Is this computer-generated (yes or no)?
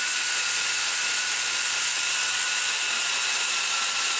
no